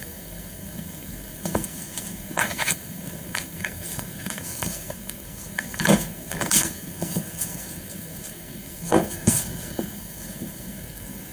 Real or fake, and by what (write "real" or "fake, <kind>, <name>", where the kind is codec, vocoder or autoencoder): fake, codec, SNAC